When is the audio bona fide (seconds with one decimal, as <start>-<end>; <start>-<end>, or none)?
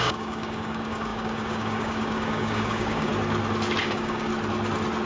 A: 3.1-3.8; 4.3-5.1